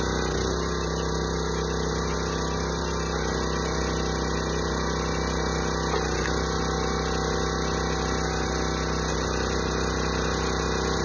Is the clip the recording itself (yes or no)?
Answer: yes